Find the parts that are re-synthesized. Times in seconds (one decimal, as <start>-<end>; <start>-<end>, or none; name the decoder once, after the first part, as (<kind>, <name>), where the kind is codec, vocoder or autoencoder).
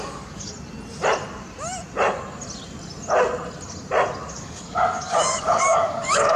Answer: 0.0-0.5 (codec, DAC); 4.3-6.4